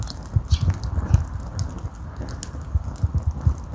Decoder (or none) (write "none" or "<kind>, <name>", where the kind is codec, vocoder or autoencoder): none